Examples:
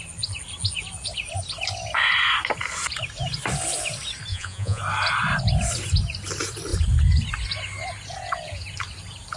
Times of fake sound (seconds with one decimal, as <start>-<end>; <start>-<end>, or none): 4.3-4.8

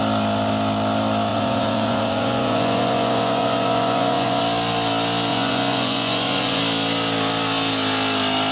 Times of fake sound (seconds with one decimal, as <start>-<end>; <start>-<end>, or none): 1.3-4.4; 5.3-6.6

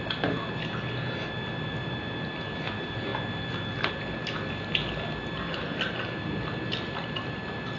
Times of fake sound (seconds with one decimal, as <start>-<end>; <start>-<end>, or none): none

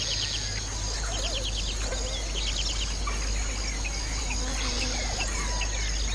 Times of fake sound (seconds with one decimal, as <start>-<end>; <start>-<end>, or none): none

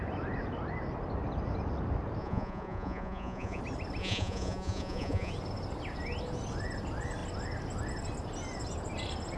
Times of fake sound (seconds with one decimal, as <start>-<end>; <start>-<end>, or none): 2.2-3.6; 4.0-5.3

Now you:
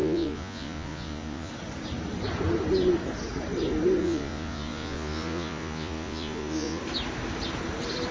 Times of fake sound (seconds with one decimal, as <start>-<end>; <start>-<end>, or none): 0.0-1.5; 4.0-6.8